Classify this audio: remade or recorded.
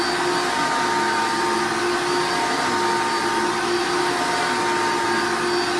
recorded